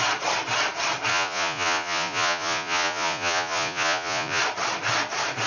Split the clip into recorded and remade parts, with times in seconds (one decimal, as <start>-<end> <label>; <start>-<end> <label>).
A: 0.0-1.1 recorded; 1.1-4.4 remade; 4.4-5.5 recorded